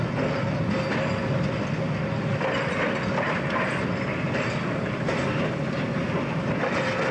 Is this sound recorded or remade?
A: recorded